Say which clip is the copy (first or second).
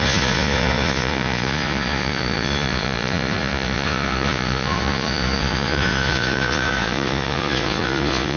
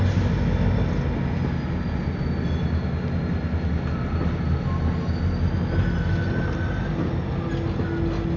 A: first